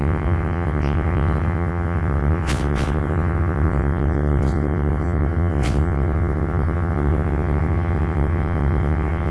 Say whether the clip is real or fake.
fake